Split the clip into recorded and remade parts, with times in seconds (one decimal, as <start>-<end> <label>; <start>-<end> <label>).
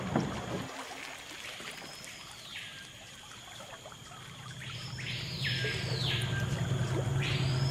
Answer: 0.0-2.5 recorded; 2.5-5.5 remade; 5.5-7.7 recorded